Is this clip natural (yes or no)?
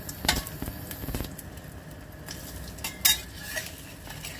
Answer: yes